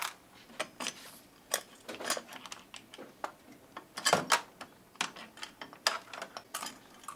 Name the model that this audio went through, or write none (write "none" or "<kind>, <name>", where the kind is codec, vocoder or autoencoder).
none